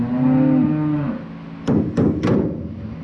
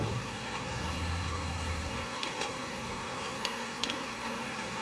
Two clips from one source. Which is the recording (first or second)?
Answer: first